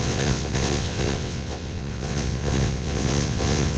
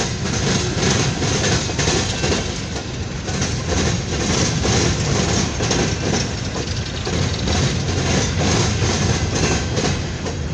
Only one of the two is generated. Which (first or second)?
first